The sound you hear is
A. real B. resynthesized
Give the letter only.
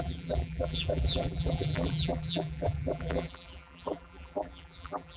B